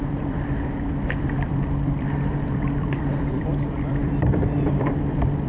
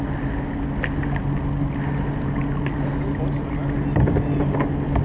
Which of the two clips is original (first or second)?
second